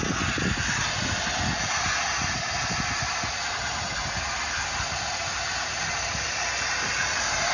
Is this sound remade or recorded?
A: recorded